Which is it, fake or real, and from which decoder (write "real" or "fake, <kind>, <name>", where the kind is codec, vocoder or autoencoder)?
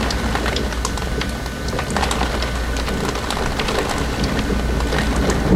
real